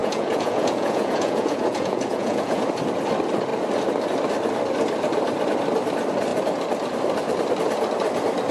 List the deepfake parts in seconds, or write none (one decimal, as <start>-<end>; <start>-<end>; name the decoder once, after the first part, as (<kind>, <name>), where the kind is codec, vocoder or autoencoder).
0.0-2.6 (vocoder, Vocos)